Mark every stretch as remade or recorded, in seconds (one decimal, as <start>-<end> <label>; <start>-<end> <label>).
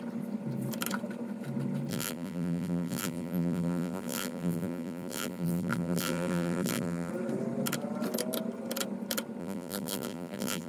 0.0-1.9 recorded; 1.9-7.1 remade; 7.1-9.4 recorded; 9.4-10.7 remade